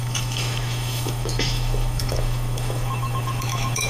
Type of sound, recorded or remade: remade